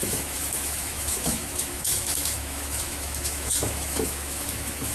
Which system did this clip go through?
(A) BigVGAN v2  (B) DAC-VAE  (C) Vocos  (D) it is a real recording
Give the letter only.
B